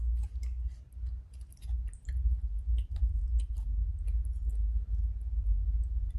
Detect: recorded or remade recorded